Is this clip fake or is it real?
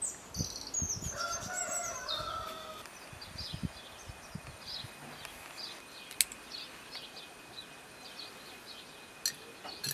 real